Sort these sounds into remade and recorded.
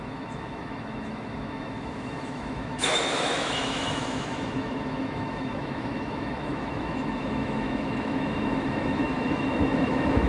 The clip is remade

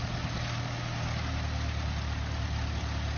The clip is recorded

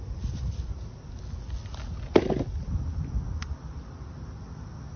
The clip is recorded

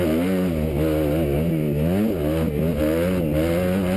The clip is recorded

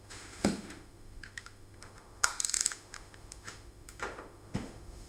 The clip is remade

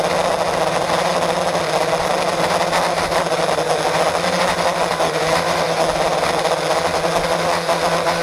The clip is recorded